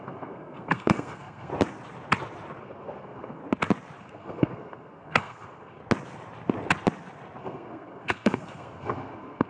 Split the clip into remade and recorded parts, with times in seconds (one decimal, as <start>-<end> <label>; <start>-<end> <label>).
0.0-1.5 remade; 1.5-2.6 recorded; 2.6-3.4 remade; 3.4-4.0 recorded; 4.0-5.8 remade; 5.8-7.4 recorded; 7.4-9.5 remade